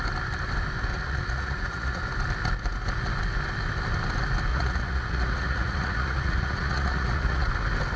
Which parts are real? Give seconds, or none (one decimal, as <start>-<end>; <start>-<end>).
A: 0.0-0.9; 2.0-4.5; 7.5-8.0